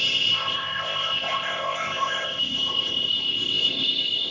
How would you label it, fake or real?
fake